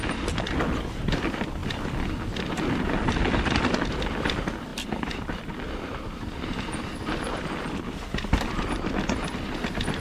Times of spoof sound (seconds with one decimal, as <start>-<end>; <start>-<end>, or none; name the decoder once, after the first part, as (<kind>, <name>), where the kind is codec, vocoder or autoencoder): 0.0-10.0 (vocoder, BigVGAN v2)